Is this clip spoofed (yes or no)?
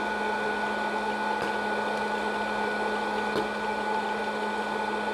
no